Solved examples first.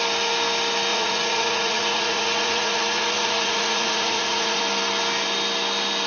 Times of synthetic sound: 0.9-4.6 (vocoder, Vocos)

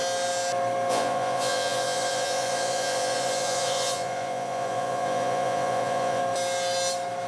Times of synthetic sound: 0.9-6.2 (vocoder, Vocos)

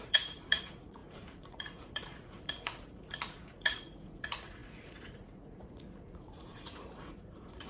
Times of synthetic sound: 0.0-7.7 (vocoder, Vocos)